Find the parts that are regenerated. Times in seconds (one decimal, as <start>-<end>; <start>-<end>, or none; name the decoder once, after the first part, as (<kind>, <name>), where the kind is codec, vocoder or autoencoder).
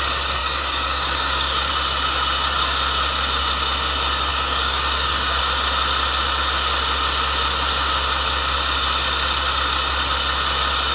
0.4-1.7 (codec, DAC); 4.3-5.4